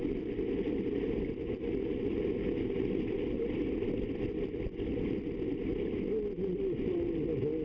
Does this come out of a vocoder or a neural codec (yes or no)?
no